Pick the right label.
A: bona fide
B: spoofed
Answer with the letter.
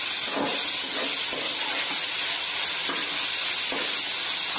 A